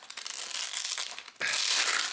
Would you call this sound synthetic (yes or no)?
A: no